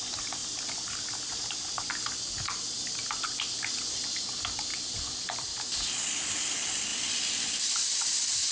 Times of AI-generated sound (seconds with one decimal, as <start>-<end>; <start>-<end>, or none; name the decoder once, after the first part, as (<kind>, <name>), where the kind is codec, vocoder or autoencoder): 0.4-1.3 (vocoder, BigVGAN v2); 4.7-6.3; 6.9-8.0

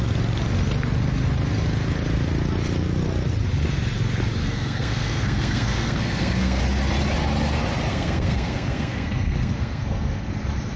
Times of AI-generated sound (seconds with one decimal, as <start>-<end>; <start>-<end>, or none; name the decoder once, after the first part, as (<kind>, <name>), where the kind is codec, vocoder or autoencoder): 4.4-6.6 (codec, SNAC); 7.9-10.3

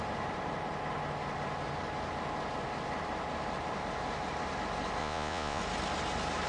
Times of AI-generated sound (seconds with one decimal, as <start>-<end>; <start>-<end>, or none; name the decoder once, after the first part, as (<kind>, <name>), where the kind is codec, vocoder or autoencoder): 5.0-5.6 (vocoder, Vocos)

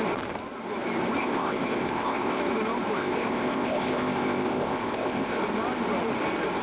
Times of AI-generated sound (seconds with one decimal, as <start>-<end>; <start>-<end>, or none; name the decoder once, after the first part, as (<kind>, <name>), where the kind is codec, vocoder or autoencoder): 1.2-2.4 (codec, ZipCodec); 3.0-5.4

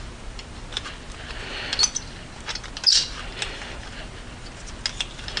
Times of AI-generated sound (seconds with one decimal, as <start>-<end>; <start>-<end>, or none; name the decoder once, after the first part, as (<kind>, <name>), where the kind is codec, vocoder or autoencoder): none

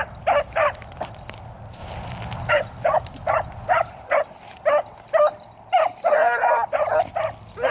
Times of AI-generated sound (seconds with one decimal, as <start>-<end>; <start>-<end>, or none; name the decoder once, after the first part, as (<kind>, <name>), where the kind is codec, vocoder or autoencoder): 3.2-4.2 (vocoder, BigVGAN v2); 6.2-7.0

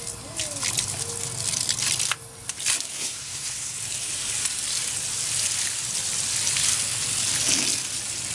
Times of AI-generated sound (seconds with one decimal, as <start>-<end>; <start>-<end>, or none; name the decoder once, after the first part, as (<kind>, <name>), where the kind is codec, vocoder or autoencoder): 2.9-3.7 (codec, SNAC)

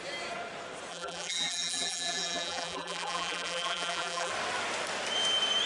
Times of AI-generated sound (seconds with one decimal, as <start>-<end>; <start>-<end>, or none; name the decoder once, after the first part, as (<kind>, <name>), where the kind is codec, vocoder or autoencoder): 0.9-4.3 (vocoder, BigVGAN v2)